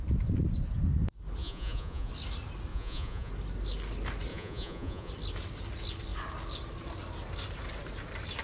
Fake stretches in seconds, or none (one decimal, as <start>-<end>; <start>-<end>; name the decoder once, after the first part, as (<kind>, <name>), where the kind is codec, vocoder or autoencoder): 1.4-2.1 (vocoder, Vocos); 2.7-3.3; 4.3-5.1